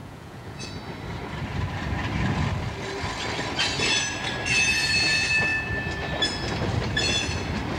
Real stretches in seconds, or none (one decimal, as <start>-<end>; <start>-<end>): 0.7-7.8